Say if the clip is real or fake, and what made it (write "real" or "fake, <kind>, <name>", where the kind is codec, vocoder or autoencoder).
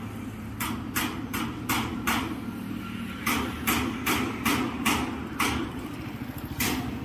real